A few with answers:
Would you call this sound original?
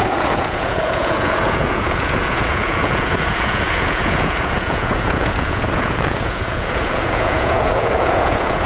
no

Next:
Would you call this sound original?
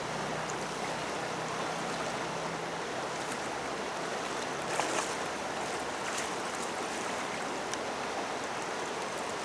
yes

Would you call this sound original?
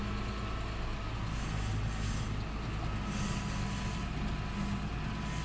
yes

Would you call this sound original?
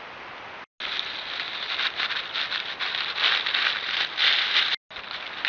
yes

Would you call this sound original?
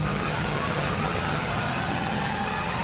no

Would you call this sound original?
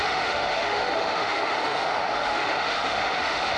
no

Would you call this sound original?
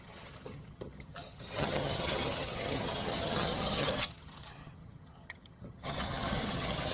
no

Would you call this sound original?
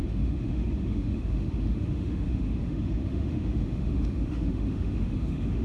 no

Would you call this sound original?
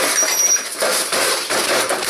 no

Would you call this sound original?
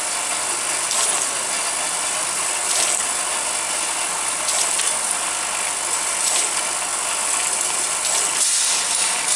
yes